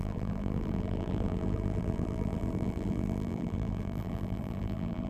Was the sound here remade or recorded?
remade